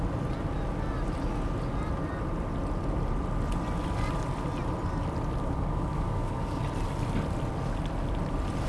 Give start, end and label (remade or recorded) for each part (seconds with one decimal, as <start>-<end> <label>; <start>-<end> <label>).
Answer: 0.0-5.4 recorded; 5.4-6.6 remade; 6.6-8.7 recorded